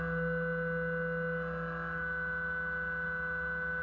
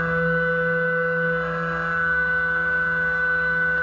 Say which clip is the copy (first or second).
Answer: second